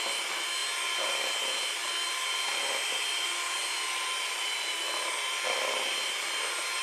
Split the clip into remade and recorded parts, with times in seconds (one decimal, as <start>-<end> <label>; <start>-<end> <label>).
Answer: 0.0-6.8 recorded